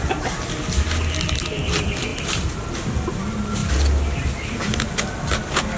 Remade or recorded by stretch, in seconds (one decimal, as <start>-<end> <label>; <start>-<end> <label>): 0.0-5.8 recorded